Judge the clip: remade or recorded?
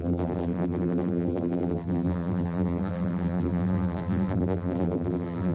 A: remade